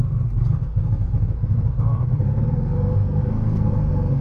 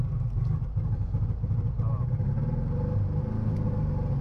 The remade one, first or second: first